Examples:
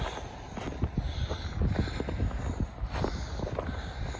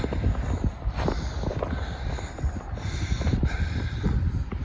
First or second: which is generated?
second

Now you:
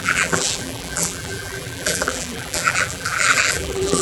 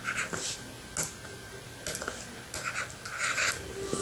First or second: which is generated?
first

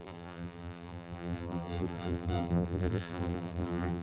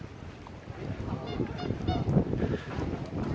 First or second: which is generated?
first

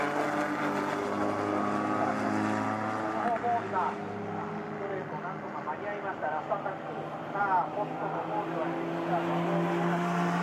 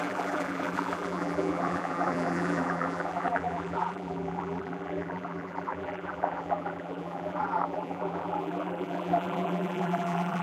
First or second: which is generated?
second